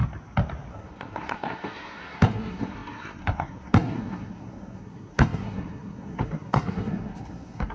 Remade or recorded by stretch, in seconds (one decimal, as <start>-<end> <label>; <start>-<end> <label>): 0.0-0.7 recorded; 0.7-7.7 remade